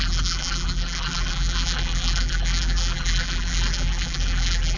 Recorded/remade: remade